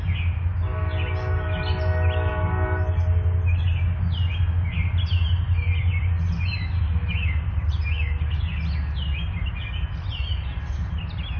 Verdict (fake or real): real